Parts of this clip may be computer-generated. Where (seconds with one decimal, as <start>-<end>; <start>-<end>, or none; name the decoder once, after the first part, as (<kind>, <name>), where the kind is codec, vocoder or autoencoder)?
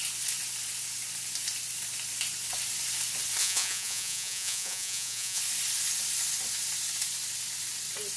3.4-5.4 (vocoder, Vocos)